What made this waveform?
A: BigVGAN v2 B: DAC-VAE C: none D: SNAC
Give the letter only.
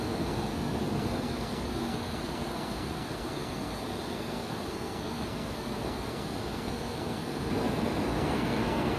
D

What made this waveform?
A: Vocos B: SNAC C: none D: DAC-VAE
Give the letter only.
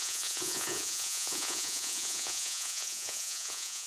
A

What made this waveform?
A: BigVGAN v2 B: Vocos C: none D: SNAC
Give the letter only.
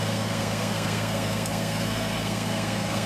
D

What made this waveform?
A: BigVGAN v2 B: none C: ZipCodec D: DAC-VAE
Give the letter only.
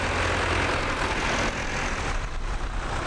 B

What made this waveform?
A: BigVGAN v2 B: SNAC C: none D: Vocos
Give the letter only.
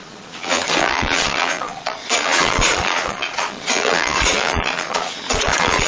D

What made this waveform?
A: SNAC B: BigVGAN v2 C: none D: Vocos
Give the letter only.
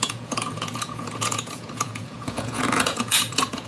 D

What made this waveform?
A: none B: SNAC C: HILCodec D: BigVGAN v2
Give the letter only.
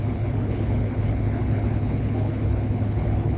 C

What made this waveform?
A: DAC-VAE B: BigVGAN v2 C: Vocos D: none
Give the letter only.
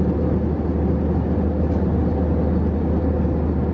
D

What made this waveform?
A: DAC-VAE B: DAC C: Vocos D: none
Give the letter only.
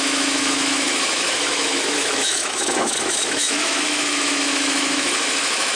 A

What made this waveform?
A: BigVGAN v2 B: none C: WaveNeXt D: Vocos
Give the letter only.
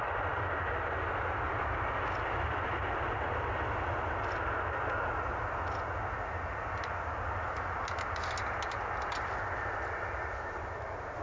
B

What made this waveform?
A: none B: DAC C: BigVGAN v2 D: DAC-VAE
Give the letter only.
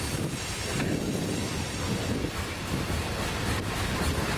A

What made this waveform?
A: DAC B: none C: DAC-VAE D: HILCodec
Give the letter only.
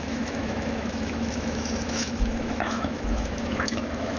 C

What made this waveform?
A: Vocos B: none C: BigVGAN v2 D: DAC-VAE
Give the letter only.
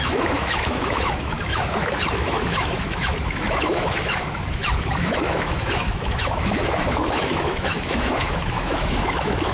D